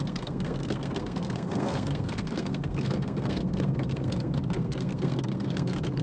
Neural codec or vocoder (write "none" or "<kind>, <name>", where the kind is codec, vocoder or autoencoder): codec, SNAC